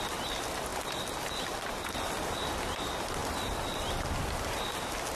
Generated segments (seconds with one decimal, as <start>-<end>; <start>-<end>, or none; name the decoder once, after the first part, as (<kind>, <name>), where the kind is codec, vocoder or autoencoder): none